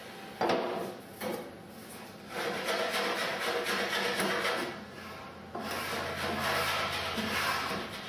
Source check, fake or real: real